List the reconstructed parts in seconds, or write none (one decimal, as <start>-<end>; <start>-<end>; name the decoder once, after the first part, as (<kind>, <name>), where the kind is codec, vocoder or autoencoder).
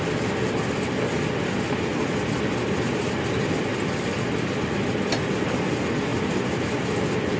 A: 6.1-6.6 (vocoder, BigVGAN v2)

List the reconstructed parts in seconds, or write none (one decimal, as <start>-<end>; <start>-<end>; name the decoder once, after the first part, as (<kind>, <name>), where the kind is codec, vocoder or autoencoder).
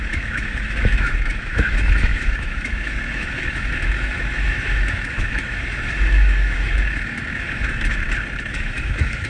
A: 0.0-8.0 (autoencoder, DAC-VAE); 8.5-9.3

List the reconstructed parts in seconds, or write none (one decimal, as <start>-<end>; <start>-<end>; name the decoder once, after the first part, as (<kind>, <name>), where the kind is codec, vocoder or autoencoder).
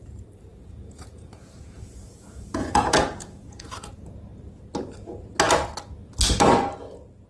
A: 0.5-3.9 (vocoder, Vocos)